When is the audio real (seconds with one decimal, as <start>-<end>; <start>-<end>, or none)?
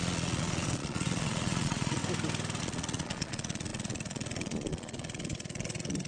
2.0-2.6